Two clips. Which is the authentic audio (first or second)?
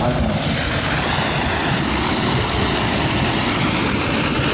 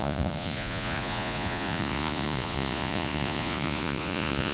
first